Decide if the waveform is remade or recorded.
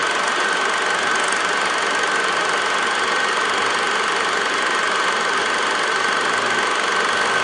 recorded